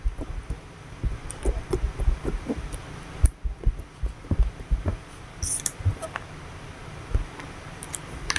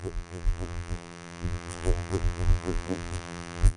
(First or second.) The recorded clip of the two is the first